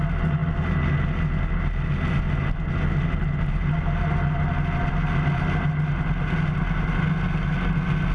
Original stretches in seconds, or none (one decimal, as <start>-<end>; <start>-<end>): 0.0-8.1